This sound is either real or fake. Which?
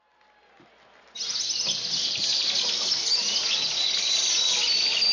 real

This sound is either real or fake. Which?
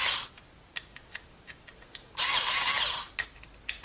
real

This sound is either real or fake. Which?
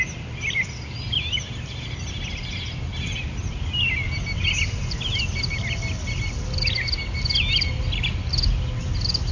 real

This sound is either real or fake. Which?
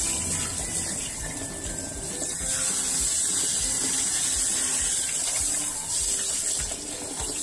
real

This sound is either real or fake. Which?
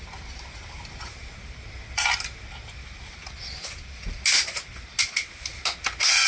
real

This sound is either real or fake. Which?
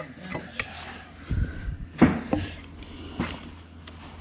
real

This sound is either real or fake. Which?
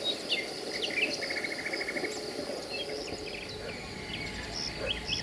real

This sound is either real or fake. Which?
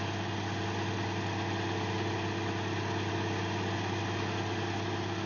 real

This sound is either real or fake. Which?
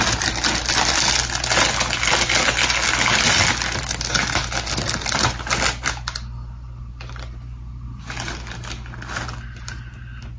real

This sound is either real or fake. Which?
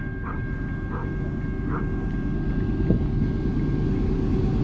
real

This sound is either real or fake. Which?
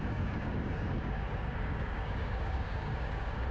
fake